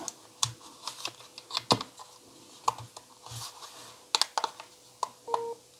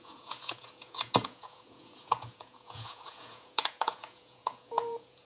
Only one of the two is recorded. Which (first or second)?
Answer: first